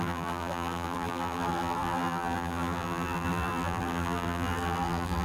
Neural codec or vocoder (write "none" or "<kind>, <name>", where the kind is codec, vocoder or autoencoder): vocoder, BigVGAN v2